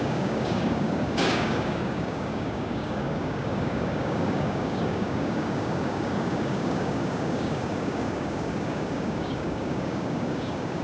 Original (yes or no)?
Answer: no